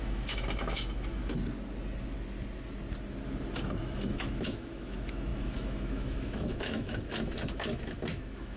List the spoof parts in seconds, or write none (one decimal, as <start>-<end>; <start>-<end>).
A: 0.0-1.2; 3.8-8.6

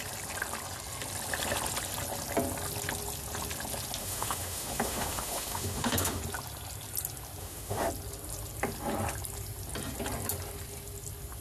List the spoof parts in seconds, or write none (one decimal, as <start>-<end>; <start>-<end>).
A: 4.0-6.2; 7.4-7.9

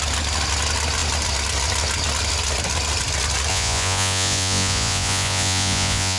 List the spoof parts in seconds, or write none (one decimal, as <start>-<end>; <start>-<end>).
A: 3.5-6.2

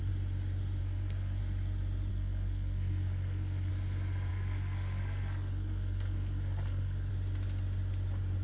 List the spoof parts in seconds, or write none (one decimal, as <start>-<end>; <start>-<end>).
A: 0.8-1.4; 2.1-3.7; 4.3-7.1

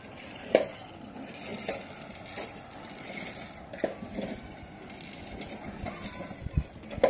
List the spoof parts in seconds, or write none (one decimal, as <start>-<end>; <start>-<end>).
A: none

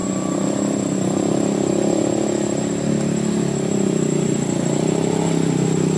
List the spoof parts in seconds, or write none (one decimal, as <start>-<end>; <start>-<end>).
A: none